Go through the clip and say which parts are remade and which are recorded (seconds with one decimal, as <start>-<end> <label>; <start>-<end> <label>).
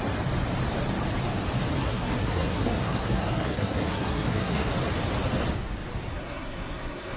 0.0-1.8 recorded; 1.8-4.7 remade; 4.7-6.1 recorded; 6.1-7.2 remade